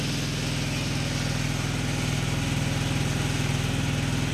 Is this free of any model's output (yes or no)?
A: yes